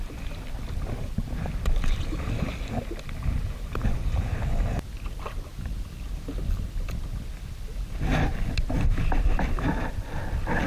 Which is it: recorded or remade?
recorded